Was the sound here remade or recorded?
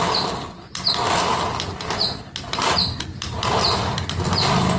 recorded